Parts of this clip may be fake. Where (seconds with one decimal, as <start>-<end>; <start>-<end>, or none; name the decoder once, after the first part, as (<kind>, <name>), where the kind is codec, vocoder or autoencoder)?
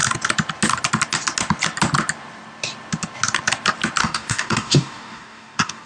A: 4.0-5.9 (codec, DAC)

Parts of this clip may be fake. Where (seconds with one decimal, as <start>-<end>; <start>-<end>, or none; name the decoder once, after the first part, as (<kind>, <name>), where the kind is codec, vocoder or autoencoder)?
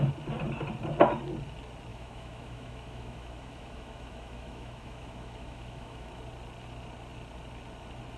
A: 1.9-6.2 (autoencoder, DAC-VAE)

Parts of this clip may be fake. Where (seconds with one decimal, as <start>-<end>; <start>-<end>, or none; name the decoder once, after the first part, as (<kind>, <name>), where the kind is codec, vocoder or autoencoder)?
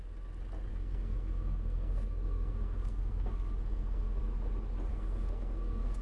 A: 0.7-4.2 (codec, SNAC); 4.9-6.0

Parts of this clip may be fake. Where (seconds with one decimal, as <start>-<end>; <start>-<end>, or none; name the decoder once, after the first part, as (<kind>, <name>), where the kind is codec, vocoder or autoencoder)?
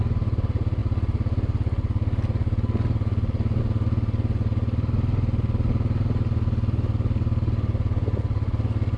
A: none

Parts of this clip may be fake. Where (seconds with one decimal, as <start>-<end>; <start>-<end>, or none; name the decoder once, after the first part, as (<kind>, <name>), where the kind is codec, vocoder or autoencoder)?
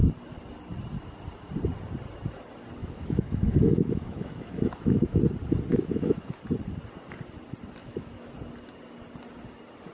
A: 2.8-5.2 (autoencoder, DAC-VAE); 5.7-6.4; 7.8-8.3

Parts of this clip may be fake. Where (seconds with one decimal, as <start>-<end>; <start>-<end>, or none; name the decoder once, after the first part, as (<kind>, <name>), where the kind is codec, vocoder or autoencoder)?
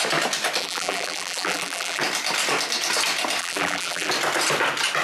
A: 0.6-2.0 (vocoder, BigVGAN v2); 3.4-4.1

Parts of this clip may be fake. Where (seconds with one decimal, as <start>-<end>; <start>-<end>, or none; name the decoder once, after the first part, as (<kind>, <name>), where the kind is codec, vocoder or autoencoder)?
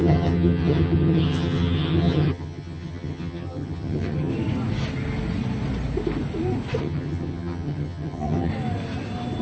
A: 0.0-4.3 (vocoder, HiFi-GAN); 6.8-8.5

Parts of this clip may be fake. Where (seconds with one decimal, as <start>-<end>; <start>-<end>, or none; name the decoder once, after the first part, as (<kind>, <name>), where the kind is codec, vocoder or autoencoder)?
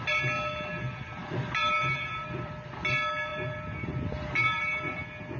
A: 1.2-2.7 (vocoder, BigVGAN v2); 3.3-5.0